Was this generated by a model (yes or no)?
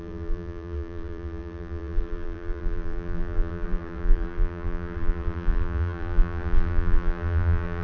yes